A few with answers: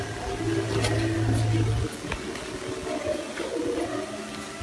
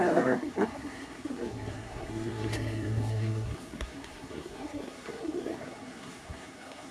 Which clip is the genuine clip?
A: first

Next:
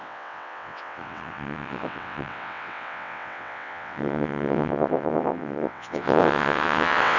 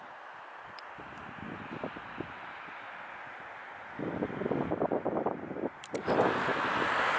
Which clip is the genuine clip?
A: second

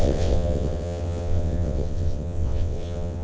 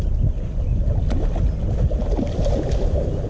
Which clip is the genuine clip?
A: second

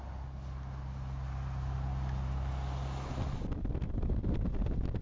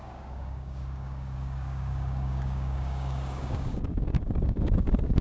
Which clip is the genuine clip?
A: first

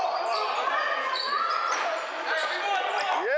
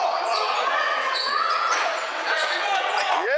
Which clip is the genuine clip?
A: first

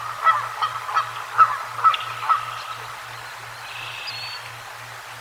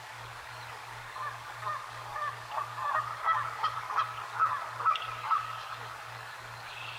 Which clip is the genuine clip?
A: first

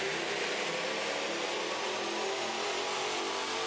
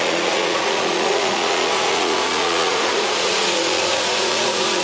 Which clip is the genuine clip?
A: first